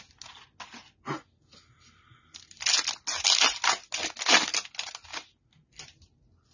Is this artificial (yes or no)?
no